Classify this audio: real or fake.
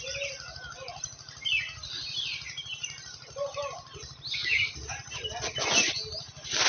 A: real